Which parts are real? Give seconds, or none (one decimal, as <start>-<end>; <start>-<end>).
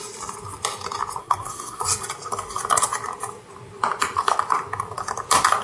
0.0-1.2; 1.8-5.6